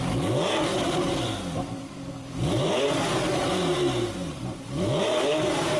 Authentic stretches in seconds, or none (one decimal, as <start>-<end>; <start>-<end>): none